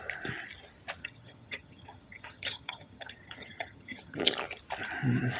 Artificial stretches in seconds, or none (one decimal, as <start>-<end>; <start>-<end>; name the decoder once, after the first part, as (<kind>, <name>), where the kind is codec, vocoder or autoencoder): 1.0-4.2 (vocoder, HiFi-GAN)